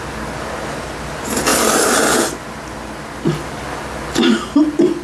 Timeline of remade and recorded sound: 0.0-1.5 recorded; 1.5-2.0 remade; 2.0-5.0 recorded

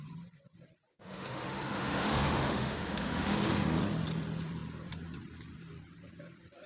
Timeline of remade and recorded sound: 0.0-0.9 recorded; 0.9-3.8 remade; 3.8-6.7 recorded

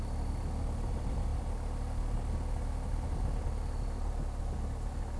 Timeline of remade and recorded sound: 0.0-5.2 recorded

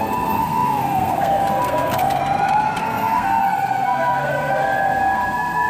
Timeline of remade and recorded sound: 0.0-2.2 remade; 2.2-2.8 recorded; 2.8-5.7 remade

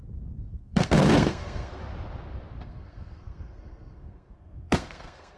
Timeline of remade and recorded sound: 0.0-0.6 recorded; 0.6-1.8 remade; 1.8-2.6 recorded; 2.6-5.4 remade